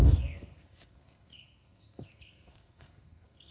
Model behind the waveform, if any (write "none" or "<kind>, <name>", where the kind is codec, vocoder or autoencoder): codec, SNAC